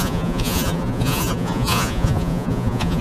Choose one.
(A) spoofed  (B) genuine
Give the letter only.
A